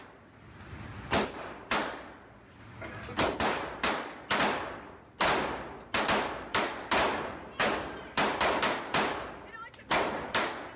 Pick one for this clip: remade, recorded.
recorded